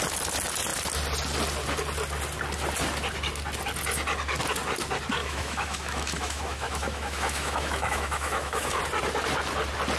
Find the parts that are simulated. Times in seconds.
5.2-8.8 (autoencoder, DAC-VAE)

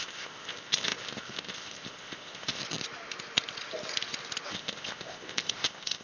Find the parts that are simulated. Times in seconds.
0.0-2.6 (codec, ZipCodec); 4.5-6.0

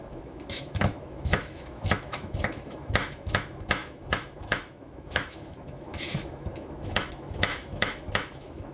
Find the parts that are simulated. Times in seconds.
0.0-8.7 (autoencoder, DAC-VAE)

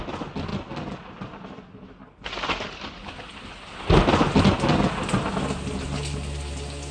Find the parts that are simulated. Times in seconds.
none

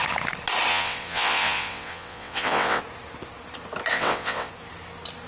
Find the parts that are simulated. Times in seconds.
0.7-2.8 (vocoder, WaveNeXt); 3.9-4.5